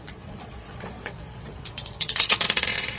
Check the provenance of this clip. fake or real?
fake